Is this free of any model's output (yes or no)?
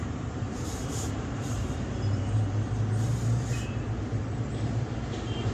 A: no